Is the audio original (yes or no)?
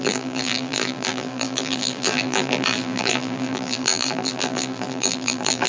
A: no